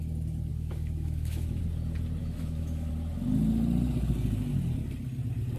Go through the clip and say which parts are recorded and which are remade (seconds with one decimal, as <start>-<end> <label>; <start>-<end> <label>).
0.0-0.5 recorded; 0.5-1.6 remade; 1.6-2.2 recorded; 2.2-2.9 remade; 2.9-5.6 recorded